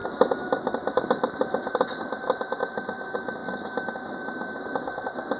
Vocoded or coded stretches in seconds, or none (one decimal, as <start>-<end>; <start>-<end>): 0.6-5.4